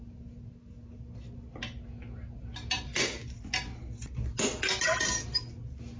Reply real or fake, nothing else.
real